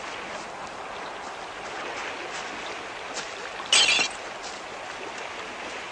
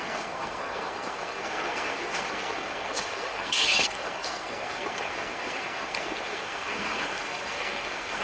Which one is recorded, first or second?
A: first